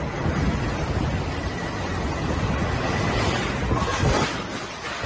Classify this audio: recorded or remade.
recorded